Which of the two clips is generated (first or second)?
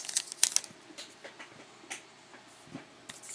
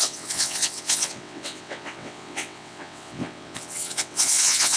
second